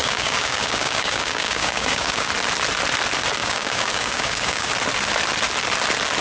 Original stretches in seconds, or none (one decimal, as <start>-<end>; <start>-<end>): 2.3-3.4; 4.7-6.2